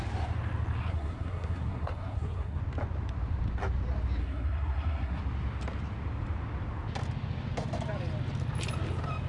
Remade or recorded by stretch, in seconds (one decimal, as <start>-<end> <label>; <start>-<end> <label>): 0.0-0.8 recorded; 0.8-2.6 remade; 2.6-4.2 recorded; 4.2-5.2 remade; 5.2-9.3 recorded